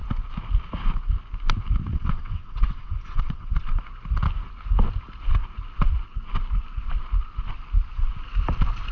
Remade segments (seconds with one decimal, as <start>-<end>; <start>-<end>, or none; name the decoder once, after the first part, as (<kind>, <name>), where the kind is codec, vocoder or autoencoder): 1.9-3.6 (vocoder, WaveNeXt)